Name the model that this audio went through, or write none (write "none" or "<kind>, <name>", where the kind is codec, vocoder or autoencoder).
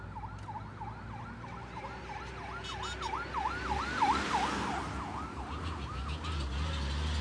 none